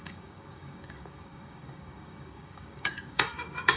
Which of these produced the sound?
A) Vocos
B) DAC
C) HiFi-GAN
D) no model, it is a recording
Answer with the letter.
B